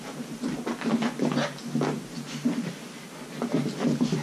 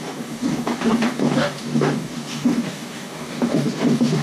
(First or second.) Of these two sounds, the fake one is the second